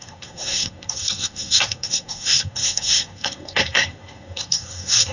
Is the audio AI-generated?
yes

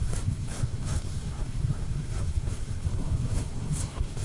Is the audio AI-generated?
yes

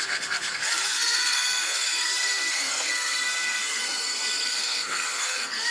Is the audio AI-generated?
yes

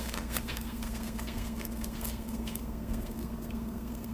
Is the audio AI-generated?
yes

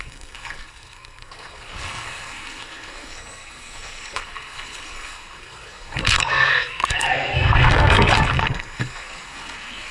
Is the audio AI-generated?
yes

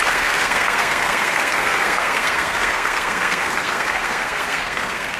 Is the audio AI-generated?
yes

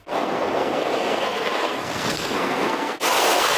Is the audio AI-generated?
yes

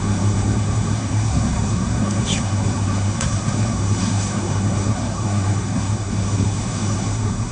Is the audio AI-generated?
yes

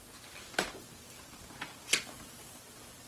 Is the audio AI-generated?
no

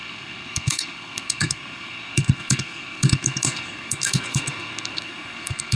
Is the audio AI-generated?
yes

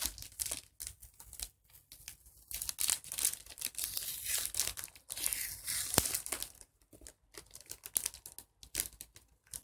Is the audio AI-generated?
no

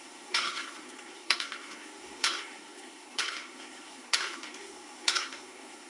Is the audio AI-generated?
yes